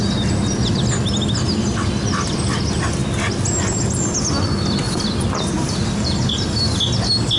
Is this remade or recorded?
recorded